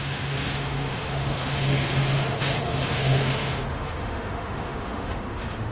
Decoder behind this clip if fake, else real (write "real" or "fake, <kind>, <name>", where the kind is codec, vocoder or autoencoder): fake, autoencoder, DAC-VAE